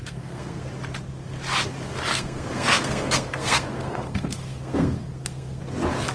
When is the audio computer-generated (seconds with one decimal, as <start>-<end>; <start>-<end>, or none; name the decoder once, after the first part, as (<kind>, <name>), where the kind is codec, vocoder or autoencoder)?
0.0-0.7 (codec, SNAC); 2.1-5.6